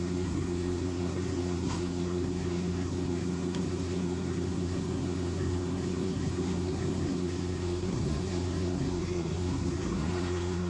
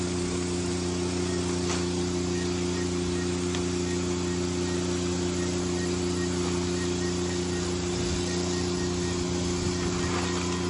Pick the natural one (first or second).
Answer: second